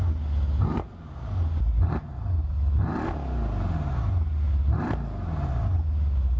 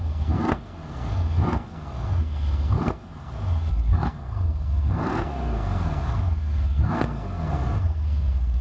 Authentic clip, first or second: first